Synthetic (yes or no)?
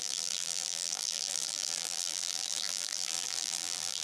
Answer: yes